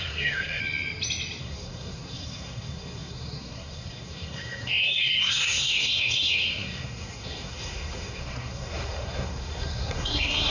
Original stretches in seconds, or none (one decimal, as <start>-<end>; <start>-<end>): 0.6-1.4

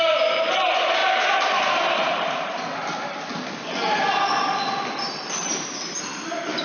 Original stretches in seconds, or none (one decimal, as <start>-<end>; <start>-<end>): 1.0-2.1; 3.3-5.0